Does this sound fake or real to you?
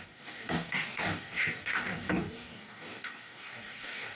fake